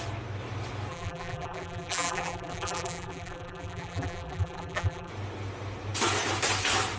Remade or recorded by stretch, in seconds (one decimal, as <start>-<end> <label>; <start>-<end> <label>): 0.0-0.9 recorded; 0.9-5.1 remade; 5.1-7.0 recorded